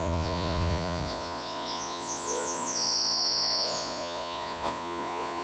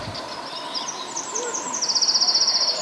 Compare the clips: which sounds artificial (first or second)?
first